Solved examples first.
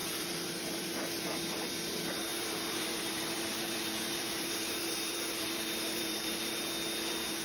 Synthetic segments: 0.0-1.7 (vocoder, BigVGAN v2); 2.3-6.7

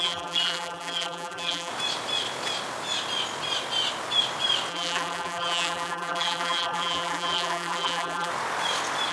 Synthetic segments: 0.0-1.7 (vocoder, BigVGAN v2); 4.7-8.3

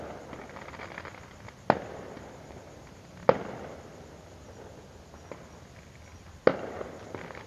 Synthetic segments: 6.1-6.7 (vocoder, BigVGAN v2)

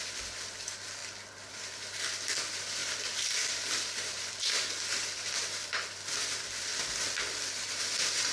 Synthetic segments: 0.0-6.7 (vocoder, BigVGAN v2); 7.7-8.3